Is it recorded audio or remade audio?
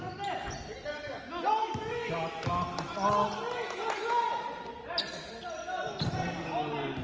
recorded